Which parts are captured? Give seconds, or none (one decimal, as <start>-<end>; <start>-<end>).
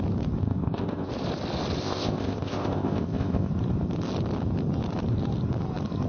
0.0-0.4; 1.1-1.8; 3.5-6.1